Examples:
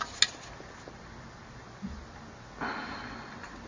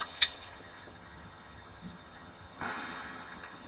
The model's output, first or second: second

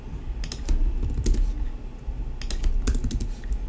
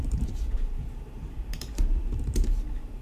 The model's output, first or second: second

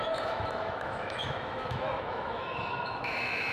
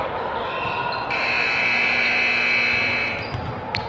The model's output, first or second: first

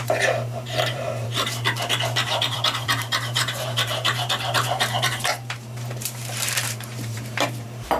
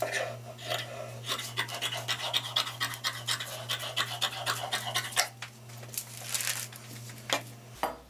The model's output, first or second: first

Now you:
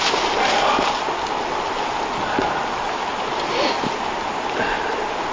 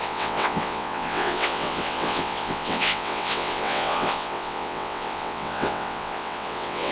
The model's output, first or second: second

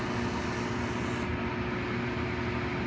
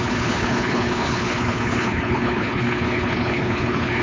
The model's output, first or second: second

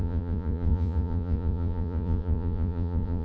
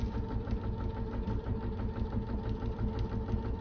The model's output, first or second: first